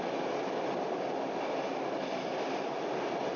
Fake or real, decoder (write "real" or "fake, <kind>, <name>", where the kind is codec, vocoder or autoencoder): real